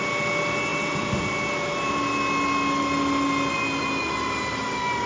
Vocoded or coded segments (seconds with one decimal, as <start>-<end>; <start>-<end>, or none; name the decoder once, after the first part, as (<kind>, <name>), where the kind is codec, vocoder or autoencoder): none